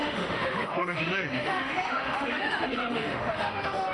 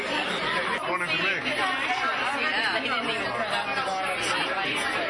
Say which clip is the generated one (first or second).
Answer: first